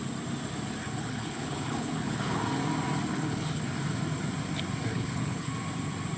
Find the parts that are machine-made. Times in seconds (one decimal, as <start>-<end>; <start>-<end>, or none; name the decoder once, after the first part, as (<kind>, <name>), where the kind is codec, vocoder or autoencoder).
0.8-2.4 (codec, HILCodec); 3.1-3.6; 4.9-5.5